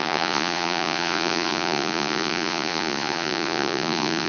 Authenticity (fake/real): fake